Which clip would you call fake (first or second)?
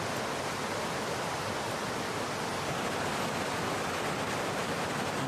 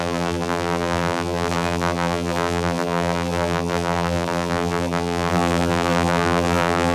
second